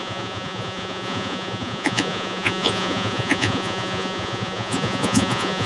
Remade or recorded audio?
remade